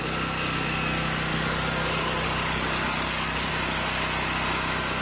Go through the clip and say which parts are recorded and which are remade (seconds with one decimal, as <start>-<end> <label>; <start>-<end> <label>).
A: 0.0-1.3 recorded; 1.3-3.5 remade; 3.5-5.0 recorded